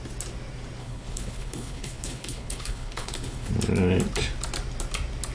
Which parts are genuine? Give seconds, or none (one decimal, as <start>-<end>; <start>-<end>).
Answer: 0.0-0.8; 3.5-5.3